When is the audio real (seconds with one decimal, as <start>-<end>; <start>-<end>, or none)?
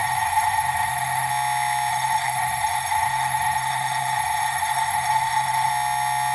1.3-1.9; 5.7-6.3